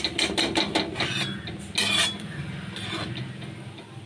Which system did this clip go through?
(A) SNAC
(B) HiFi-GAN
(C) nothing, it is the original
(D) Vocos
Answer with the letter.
C